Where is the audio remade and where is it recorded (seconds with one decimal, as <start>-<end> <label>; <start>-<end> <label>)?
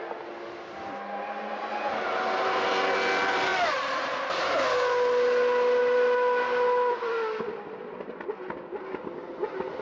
0.0-9.8 recorded